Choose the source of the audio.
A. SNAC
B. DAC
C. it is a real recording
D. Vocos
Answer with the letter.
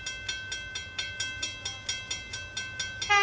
C